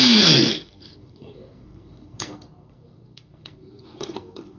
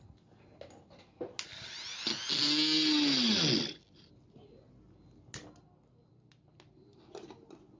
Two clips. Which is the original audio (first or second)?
second